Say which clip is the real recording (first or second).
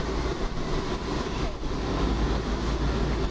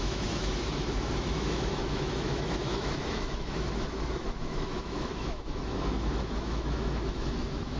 first